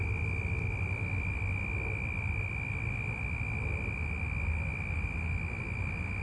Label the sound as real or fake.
real